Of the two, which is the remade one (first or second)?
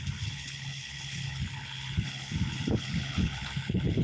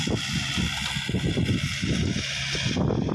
first